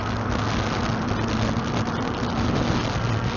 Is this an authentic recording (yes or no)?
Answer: yes